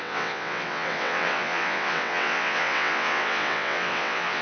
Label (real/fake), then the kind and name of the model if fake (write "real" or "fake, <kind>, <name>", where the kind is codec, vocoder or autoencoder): fake, vocoder, WaveNeXt